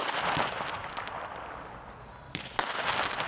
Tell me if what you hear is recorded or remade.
recorded